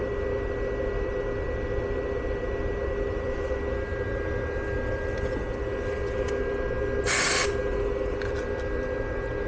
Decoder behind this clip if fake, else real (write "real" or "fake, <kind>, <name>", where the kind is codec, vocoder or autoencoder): real